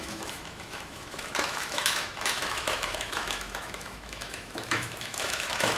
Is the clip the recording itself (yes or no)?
no